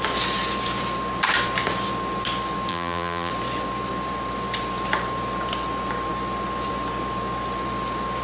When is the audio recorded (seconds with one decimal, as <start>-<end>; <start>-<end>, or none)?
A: 0.0-2.7; 3.3-8.2